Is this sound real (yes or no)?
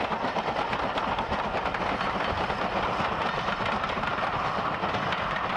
yes